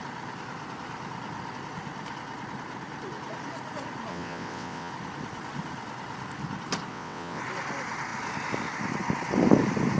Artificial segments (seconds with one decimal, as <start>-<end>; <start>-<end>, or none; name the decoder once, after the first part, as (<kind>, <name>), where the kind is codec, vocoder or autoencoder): 4.1-4.9 (vocoder, WaveNeXt); 6.9-7.4